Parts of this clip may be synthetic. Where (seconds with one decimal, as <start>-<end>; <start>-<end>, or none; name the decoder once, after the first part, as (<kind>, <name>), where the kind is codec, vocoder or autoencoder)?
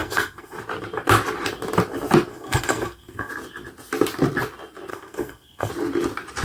0.0-0.6 (codec, SNAC); 2.3-3.3; 4.9-5.7